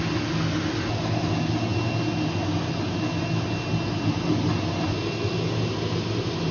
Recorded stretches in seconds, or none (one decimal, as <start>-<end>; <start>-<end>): 0.0-6.5